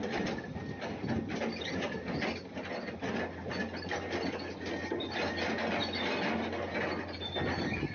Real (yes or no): yes